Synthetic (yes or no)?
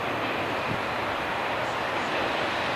no